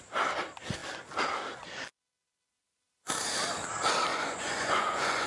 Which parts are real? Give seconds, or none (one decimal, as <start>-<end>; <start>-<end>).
0.0-4.1